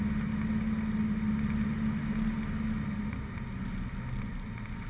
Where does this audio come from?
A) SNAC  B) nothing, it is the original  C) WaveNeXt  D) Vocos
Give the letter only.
B